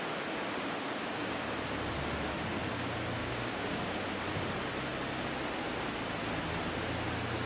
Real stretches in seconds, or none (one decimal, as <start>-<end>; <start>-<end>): 0.0-3.2; 3.8-7.5